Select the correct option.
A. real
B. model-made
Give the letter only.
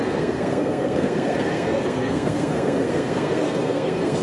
B